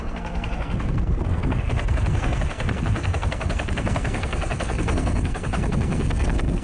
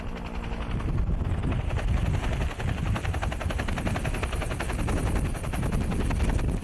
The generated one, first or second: first